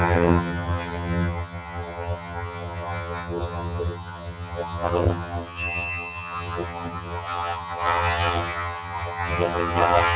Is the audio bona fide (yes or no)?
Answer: no